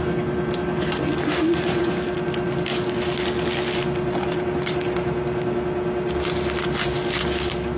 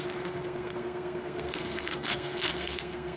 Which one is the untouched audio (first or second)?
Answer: first